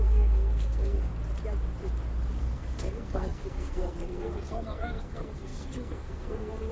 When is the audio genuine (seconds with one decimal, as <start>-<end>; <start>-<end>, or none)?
1.1-2.4